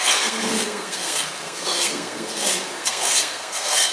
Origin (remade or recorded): remade